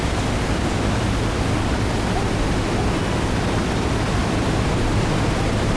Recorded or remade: recorded